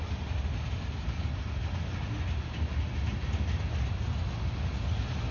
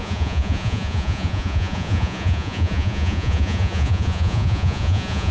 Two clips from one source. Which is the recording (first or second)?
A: first